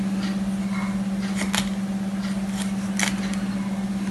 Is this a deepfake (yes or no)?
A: no